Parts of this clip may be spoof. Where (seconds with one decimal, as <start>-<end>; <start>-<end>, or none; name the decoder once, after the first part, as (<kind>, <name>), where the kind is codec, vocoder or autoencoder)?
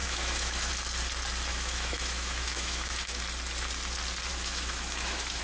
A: 0.0-0.7 (autoencoder, DAC-VAE); 1.5-3.2; 4.3-5.4